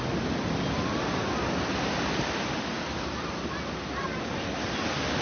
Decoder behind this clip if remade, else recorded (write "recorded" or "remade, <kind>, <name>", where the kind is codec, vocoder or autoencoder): recorded